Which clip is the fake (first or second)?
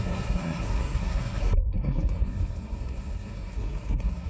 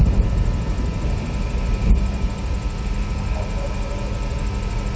first